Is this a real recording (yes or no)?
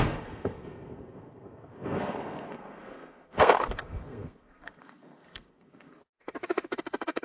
no